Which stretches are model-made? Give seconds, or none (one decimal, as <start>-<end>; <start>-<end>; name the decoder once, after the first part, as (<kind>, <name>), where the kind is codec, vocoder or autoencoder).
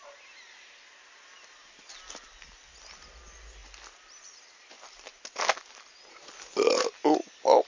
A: none